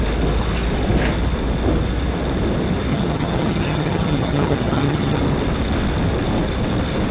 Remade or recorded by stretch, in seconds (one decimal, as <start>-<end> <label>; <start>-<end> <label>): 0.0-2.9 recorded; 2.9-5.2 remade; 5.2-7.1 recorded